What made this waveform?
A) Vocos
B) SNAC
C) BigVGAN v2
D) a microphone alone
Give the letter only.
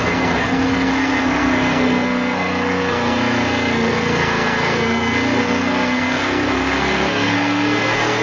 B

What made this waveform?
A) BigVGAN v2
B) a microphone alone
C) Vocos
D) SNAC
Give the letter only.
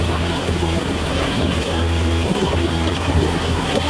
D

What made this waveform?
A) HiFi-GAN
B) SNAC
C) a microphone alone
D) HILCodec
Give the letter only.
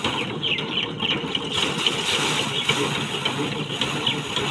C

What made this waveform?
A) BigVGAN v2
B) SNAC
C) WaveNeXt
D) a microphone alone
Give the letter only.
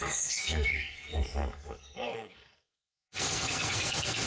B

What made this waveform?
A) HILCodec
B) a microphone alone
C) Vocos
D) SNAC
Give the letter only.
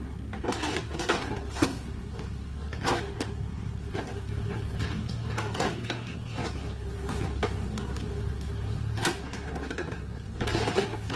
D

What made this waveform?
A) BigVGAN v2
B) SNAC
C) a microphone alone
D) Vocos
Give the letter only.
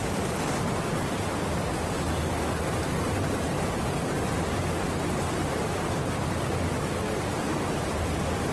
C